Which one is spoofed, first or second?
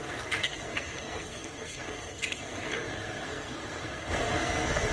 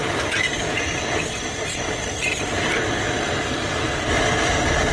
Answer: first